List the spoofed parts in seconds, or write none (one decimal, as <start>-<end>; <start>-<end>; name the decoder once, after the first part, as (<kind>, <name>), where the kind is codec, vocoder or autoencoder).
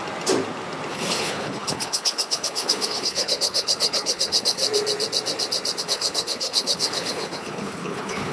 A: 0.9-4.6 (codec, HILCodec); 5.8-8.3